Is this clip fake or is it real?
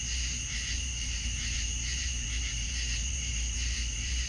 fake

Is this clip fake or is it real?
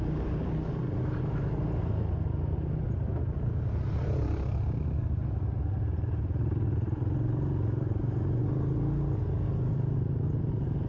real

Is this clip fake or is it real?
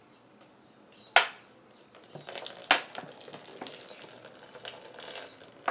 real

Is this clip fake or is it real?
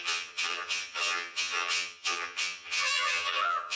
fake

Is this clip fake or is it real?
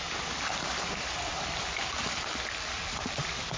fake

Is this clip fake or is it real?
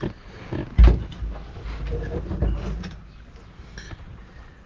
real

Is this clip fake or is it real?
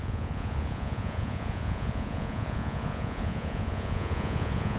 fake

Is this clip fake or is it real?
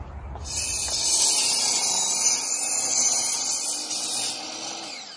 real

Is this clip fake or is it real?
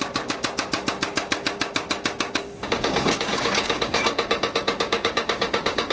fake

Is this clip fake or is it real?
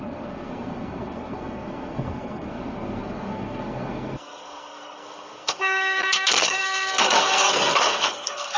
fake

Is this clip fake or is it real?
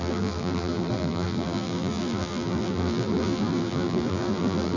fake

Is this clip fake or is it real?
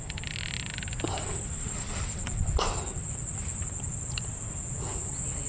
real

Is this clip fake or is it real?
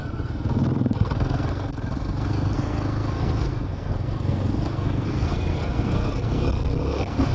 fake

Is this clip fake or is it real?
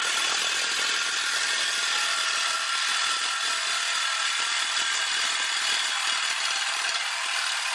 real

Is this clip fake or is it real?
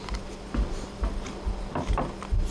real